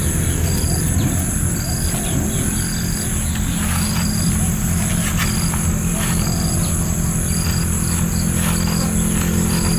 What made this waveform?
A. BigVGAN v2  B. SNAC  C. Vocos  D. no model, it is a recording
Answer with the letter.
D